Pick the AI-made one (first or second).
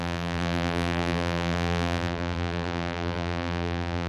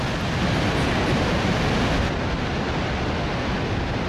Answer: first